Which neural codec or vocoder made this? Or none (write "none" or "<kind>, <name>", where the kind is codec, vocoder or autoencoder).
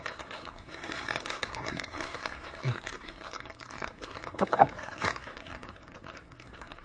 codec, SNAC